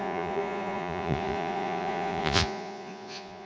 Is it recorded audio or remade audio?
remade